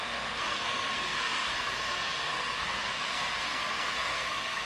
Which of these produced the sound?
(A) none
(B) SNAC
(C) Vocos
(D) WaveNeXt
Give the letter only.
B